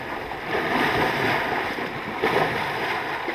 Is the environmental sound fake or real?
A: real